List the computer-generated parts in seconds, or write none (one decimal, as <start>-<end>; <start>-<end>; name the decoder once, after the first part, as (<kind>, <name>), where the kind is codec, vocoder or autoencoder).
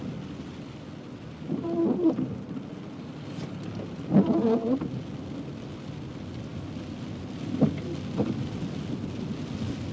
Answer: none